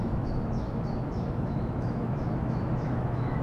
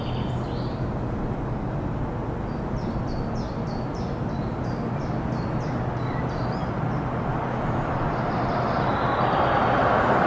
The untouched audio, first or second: second